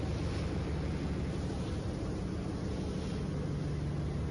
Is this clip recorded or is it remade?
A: recorded